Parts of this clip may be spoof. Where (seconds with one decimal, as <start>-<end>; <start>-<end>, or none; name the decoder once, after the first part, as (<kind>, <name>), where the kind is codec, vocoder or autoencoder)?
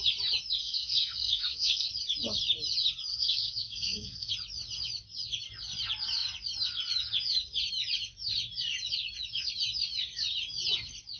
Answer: 0.6-1.9 (codec, SNAC); 3.1-4.3